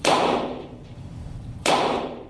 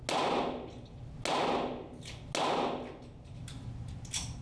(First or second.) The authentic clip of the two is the second